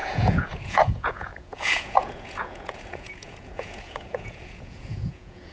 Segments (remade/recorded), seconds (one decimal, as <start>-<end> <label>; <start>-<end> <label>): 0.0-5.5 remade

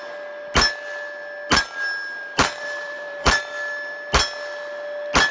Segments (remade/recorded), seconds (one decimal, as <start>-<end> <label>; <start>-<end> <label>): 0.0-2.2 recorded; 2.2-3.4 remade; 3.4-5.3 recorded

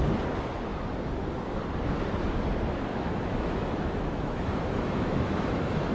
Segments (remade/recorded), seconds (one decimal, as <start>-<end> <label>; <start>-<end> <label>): 0.0-2.9 recorded; 2.9-5.9 remade